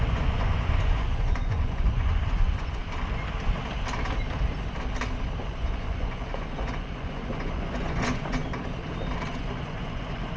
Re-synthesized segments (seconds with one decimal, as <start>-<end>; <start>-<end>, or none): 0.0-2.8; 5.4-8.4; 9.3-10.4